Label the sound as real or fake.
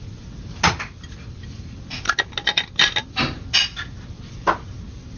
real